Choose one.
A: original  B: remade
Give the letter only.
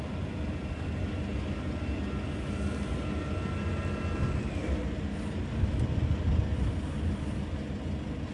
A